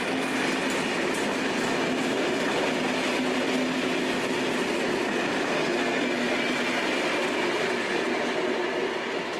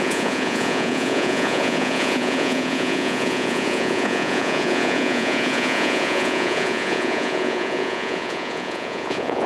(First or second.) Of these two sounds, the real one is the first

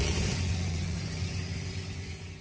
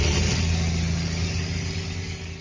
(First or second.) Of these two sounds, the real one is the second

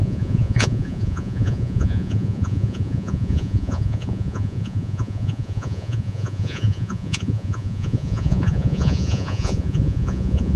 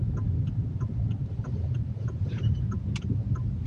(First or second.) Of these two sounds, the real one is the second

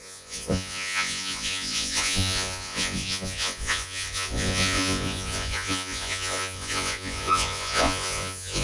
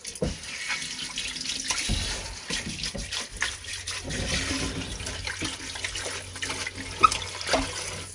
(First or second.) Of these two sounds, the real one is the second